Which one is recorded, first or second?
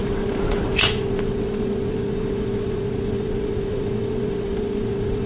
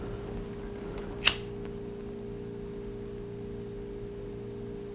second